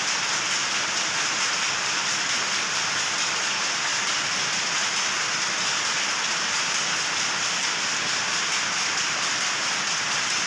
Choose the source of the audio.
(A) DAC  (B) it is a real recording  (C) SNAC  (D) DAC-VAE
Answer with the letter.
B